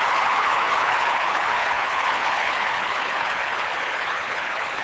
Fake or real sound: fake